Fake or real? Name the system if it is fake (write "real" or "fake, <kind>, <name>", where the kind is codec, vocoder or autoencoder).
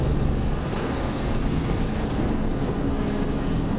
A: fake, codec, SNAC